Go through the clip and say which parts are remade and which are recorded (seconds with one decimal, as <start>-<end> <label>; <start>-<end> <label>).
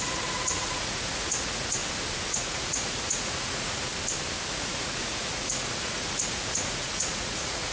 0.0-1.8 remade; 1.8-2.3 recorded; 2.3-3.9 remade; 3.9-4.5 recorded; 4.5-7.7 remade